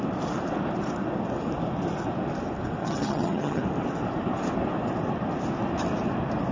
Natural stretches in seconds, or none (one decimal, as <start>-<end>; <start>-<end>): 0.0-2.8; 3.6-6.5